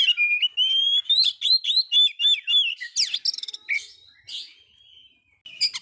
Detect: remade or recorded recorded